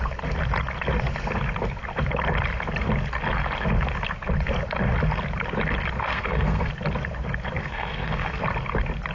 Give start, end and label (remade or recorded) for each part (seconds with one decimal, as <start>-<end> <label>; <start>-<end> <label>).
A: 0.0-6.0 recorded; 6.0-6.7 remade; 6.7-7.6 recorded; 7.6-8.4 remade; 8.4-9.1 recorded